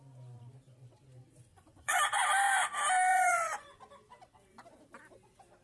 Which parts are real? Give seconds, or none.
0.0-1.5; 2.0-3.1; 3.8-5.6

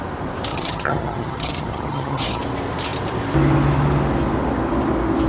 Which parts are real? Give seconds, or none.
0.0-0.5; 2.4-5.3

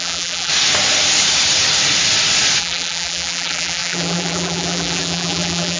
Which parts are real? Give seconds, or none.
0.5-2.6

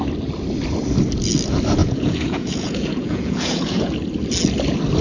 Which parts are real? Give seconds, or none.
0.0-1.8; 3.9-5.0

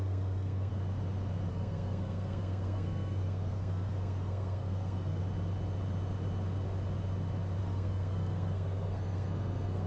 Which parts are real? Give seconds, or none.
0.7-1.5; 5.2-7.6

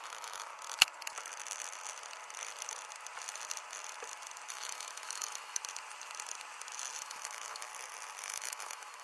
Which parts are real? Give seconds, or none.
0.5-4.5; 5.6-7.0; 7.7-8.2